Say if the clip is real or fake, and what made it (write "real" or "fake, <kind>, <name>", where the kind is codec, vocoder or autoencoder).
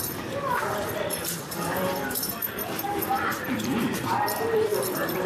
fake, vocoder, BigVGAN v2